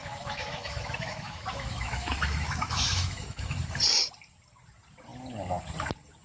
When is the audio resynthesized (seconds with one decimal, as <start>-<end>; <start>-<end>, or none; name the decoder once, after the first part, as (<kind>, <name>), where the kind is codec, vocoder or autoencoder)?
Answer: 0.0-3.7 (autoencoder, DAC-VAE)